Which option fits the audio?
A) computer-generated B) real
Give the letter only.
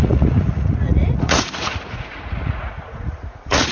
A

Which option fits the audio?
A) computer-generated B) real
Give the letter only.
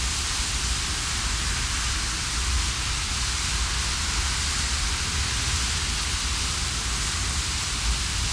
B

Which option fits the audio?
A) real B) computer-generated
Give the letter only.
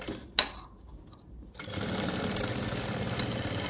A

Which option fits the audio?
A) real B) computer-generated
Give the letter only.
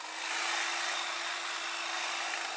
A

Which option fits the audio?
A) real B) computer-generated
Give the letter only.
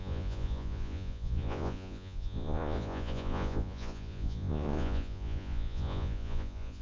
B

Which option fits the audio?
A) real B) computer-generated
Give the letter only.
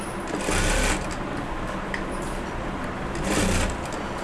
A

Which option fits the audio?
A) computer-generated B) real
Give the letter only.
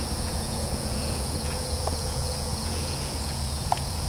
A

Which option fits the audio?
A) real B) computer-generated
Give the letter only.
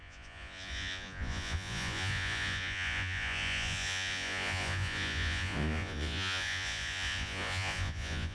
B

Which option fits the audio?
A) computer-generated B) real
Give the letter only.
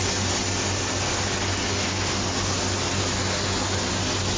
B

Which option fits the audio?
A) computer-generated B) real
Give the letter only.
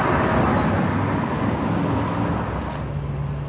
B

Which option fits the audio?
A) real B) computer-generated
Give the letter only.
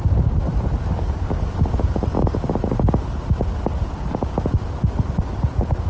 A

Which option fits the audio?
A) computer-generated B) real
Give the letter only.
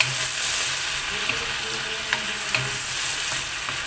B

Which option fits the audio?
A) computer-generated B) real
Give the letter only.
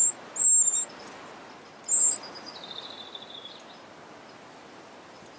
B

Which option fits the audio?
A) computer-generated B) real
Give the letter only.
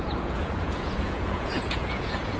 A